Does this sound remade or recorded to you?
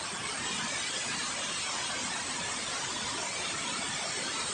recorded